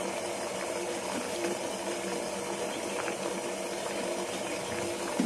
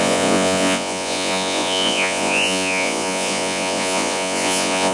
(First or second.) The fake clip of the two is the second